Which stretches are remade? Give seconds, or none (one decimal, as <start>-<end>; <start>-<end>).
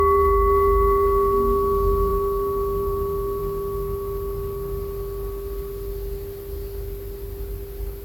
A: none